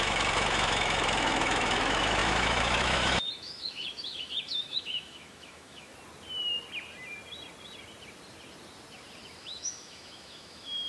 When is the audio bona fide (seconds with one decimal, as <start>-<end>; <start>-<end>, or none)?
5.9-9.4